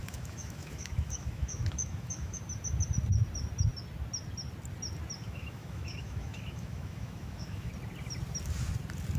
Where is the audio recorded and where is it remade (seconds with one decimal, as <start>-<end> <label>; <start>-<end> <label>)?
0.0-2.4 remade; 2.4-5.2 recorded; 5.2-7.7 remade; 7.7-9.2 recorded